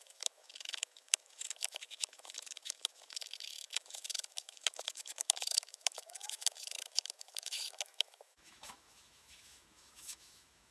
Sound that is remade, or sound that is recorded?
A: remade